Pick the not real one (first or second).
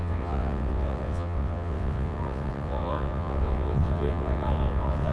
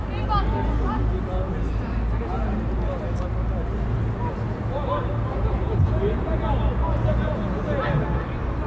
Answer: first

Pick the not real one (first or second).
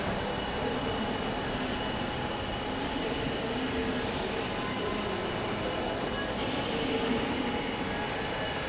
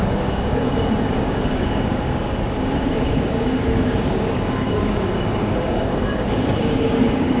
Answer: second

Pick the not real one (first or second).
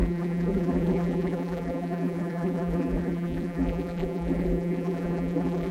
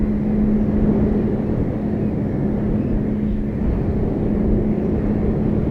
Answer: first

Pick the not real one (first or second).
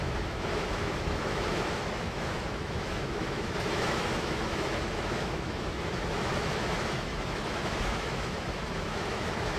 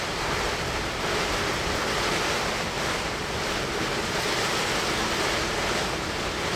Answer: first